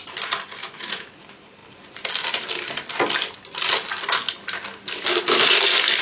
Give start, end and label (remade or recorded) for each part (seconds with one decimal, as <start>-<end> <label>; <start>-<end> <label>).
0.0-0.6 recorded; 0.6-1.1 remade; 1.1-6.0 recorded